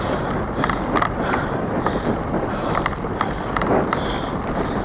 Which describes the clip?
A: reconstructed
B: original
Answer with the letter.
B